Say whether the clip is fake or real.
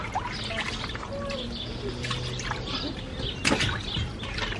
real